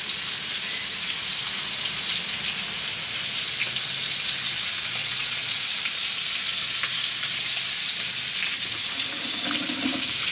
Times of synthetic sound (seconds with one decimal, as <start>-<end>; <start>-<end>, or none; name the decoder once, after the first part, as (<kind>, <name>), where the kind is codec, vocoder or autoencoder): 5.0-5.7 (vocoder, Vocos)